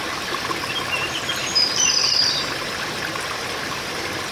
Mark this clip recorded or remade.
recorded